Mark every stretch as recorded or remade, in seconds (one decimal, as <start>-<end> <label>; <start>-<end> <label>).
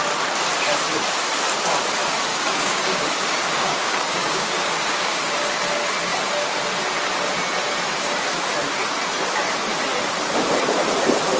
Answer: 0.0-2.3 recorded; 2.3-5.3 remade; 5.3-11.4 recorded